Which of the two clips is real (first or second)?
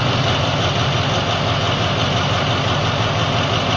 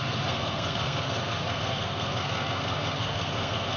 first